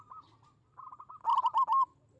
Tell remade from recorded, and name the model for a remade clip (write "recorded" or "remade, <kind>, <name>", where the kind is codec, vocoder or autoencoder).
recorded